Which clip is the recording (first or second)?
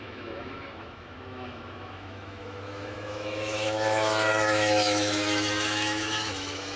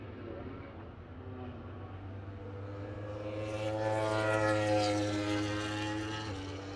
second